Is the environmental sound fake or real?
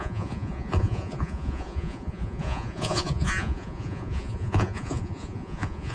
fake